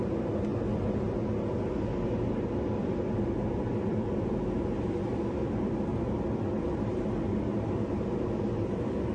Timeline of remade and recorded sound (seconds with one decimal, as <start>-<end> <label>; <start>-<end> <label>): 0.0-9.1 recorded